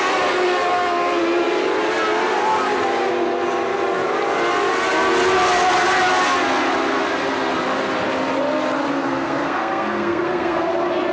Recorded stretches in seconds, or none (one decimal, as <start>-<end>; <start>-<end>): 0.0-8.9; 10.7-11.1